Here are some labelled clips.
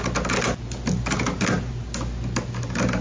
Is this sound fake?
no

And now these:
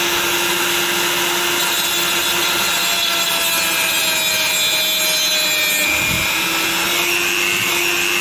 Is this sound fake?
no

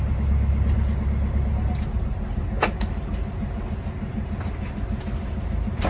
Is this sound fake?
no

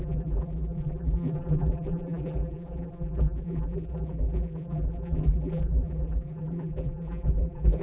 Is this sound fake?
yes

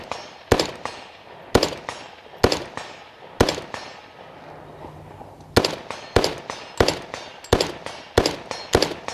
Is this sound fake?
no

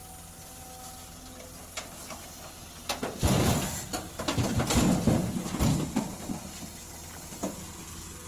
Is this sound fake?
no